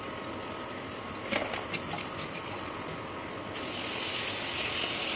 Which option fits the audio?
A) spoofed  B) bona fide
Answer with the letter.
B